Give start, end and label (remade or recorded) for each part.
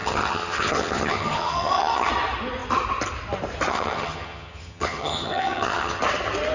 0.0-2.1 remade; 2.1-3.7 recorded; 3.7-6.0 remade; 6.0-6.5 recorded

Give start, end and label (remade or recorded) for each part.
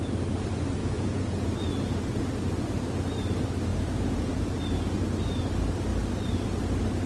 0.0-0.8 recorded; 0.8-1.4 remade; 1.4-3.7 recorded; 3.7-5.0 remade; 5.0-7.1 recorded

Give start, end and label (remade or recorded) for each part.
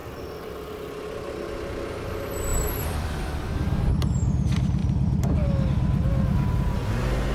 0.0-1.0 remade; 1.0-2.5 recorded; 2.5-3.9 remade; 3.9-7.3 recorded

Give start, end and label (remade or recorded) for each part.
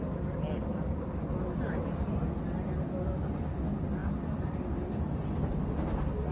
0.0-6.3 recorded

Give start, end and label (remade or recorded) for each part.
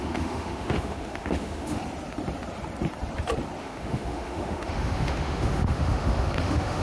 0.0-1.8 remade; 1.8-3.6 recorded; 3.6-6.8 remade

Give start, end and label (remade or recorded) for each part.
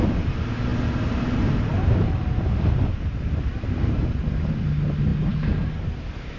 0.0-6.4 recorded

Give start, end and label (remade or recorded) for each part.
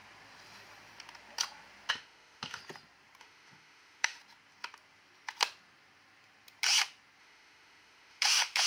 0.0-1.9 recorded; 1.9-2.6 remade; 2.6-3.2 recorded; 3.2-4.2 remade; 4.2-7.2 recorded; 7.2-8.7 remade